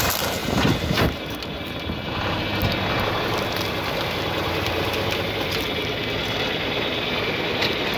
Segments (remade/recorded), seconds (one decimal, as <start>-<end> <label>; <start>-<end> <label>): 0.0-8.0 recorded